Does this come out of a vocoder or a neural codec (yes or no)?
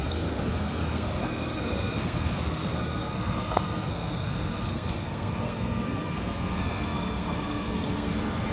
yes